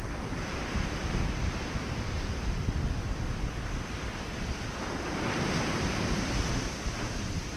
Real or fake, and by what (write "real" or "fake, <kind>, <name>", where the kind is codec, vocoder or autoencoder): real